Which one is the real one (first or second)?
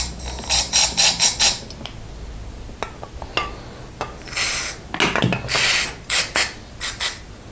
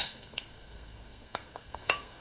first